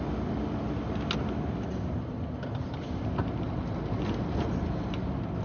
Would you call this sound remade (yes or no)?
no